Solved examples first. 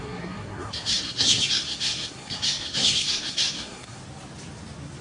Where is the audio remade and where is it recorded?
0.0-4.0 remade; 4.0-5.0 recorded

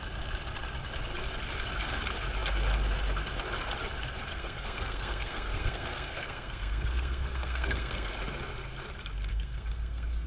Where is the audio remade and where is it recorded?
0.0-4.3 recorded; 4.3-8.1 remade; 8.1-9.3 recorded; 9.3-10.3 remade